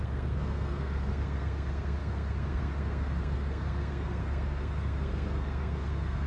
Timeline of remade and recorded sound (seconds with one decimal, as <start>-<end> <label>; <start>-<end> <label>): 0.0-6.3 remade